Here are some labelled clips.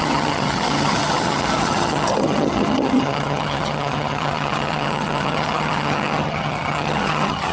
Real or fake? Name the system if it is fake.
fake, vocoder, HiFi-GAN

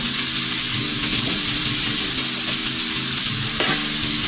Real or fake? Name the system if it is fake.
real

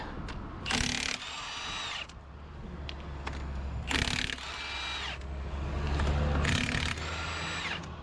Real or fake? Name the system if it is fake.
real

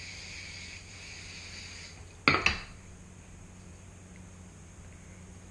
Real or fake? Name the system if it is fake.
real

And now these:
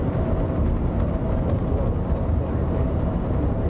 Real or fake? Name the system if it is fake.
real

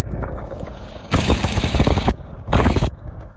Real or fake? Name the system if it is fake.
fake, codec, DAC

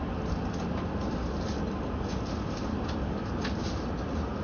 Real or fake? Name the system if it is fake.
real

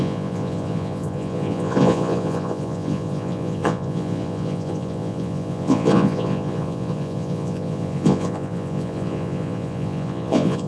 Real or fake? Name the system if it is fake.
fake, vocoder, Vocos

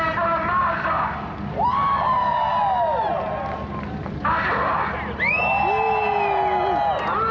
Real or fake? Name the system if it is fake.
real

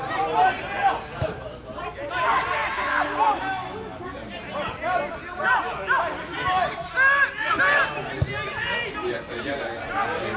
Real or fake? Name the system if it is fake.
real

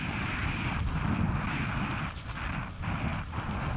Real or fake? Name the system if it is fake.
real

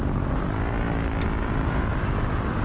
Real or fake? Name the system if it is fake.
real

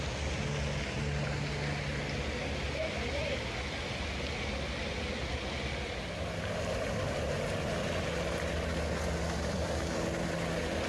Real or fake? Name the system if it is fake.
real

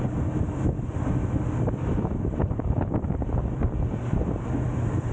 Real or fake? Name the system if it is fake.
fake, vocoder, BigVGAN v2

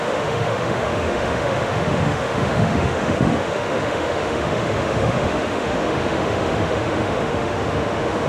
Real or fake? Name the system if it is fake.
fake, autoencoder, DAC-VAE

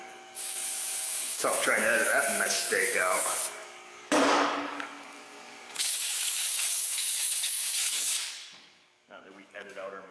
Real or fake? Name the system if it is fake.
fake, codec, DAC